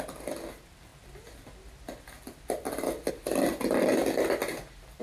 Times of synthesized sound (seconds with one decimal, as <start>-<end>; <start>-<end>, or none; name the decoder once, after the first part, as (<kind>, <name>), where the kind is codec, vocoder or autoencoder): none

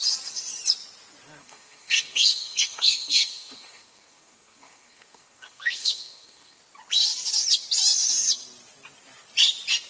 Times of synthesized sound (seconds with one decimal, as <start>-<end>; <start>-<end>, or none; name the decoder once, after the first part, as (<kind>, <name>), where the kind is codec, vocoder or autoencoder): 1.4-6.6 (codec, SNAC)

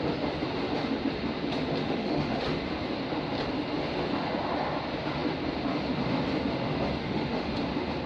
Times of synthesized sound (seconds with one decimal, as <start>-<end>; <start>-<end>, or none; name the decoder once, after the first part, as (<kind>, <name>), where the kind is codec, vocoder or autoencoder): 1.8-2.3 (autoencoder, DAC-VAE); 7.0-7.6

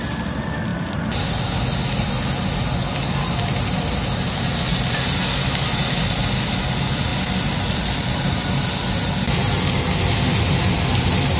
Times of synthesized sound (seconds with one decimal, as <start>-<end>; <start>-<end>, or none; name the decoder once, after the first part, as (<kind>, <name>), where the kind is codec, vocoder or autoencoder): none

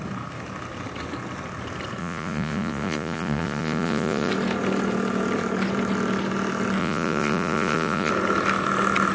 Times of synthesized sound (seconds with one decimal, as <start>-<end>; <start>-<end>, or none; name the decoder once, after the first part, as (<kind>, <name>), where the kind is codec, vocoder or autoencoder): 2.0-4.3 (vocoder, Vocos); 6.8-8.1

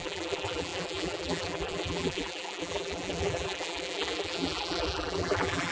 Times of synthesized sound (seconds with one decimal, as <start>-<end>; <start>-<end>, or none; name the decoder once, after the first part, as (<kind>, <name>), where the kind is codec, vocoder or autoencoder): 0.0-5.7 (vocoder, BigVGAN v2)

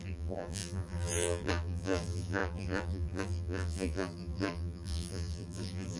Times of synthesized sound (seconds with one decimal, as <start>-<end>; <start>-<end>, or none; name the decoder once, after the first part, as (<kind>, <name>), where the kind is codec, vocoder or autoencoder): 0.0-6.0 (vocoder, BigVGAN v2)